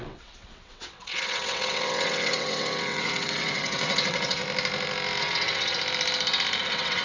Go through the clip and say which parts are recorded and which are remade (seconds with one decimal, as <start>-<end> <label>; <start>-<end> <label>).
0.0-4.4 remade; 4.4-5.2 recorded; 5.2-5.8 remade; 5.8-6.6 recorded; 6.6-7.0 remade